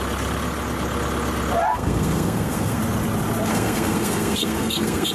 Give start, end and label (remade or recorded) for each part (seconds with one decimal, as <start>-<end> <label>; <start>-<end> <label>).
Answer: 0.0-1.7 recorded; 1.7-2.8 remade; 2.8-3.5 recorded; 3.5-5.1 remade